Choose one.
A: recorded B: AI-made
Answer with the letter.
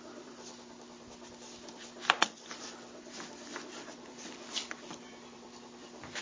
B